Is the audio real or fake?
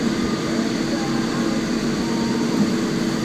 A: real